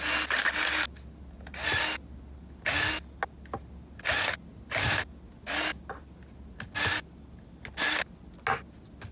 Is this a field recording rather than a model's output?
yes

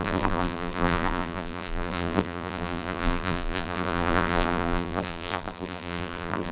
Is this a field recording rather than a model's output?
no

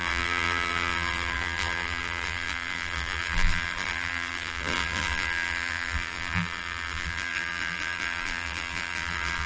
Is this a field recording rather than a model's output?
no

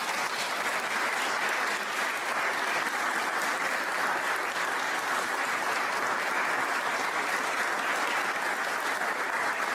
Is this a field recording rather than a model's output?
yes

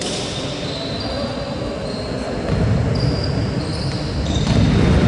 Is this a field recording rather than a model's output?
yes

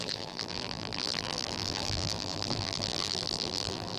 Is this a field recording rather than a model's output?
no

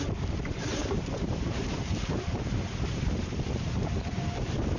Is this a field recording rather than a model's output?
no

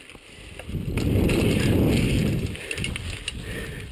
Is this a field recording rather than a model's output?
yes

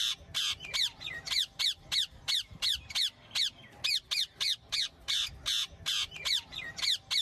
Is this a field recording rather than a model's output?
no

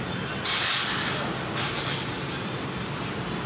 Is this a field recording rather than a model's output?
no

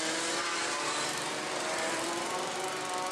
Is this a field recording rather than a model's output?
yes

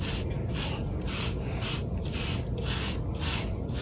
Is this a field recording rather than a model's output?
yes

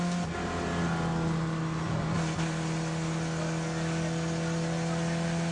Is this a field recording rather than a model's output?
yes